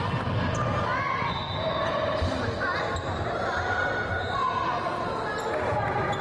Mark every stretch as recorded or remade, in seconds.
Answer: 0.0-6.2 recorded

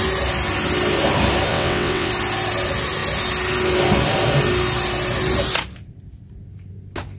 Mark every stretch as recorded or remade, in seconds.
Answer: 0.0-1.5 recorded; 1.5-2.1 remade; 2.1-7.2 recorded

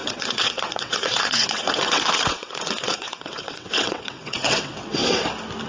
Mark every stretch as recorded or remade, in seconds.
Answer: 0.0-5.0 remade; 5.0-5.7 recorded

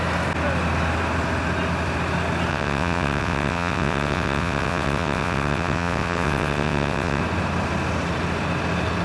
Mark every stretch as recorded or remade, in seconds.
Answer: 0.0-2.5 recorded; 2.5-7.2 remade; 7.2-9.0 recorded

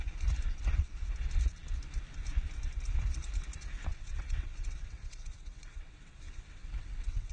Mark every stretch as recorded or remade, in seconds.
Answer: 0.0-3.9 recorded; 3.9-7.3 remade

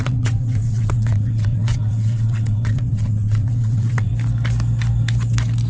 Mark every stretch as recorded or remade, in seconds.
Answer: 0.0-4.1 remade; 4.1-5.7 recorded

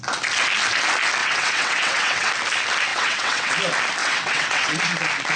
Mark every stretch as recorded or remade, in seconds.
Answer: 0.0-1.2 recorded; 1.2-2.3 remade; 2.3-2.9 recorded; 2.9-3.5 remade; 3.5-4.0 recorded; 4.0-4.8 remade; 4.8-5.4 recorded